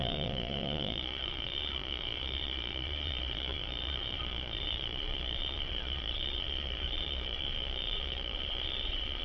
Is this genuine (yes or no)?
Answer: no